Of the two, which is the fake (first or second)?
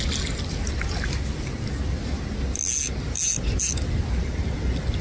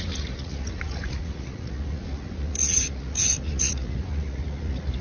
second